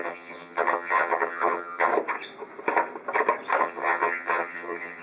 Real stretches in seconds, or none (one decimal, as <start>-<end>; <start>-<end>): 1.9-3.6